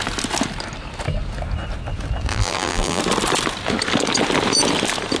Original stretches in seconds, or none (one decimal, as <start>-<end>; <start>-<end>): 0.0-2.3; 3.0-5.2